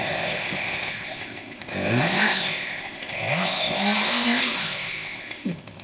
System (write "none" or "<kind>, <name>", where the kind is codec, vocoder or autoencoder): codec, ZipCodec